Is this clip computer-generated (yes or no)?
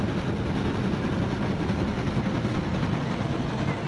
no